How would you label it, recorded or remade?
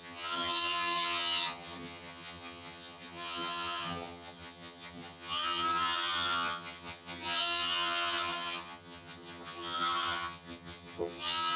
remade